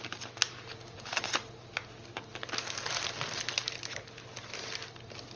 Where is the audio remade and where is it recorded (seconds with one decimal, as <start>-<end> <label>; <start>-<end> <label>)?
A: 0.0-5.4 recorded